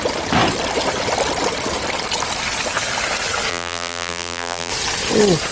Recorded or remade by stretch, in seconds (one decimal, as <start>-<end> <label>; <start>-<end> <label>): 0.0-3.5 recorded; 3.5-4.7 remade; 4.7-5.5 recorded